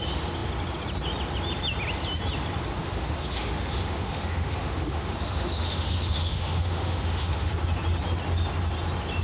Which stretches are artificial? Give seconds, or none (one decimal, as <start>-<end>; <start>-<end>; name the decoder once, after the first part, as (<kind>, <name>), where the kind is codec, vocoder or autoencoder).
2.8-7.5 (autoencoder, DAC-VAE)